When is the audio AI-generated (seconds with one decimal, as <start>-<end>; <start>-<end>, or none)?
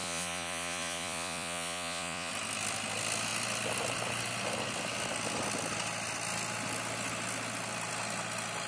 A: 0.0-2.3